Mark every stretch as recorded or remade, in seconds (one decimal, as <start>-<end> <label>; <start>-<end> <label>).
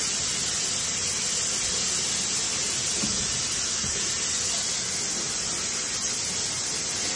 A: 0.0-2.6 recorded; 2.6-4.1 remade; 4.1-7.2 recorded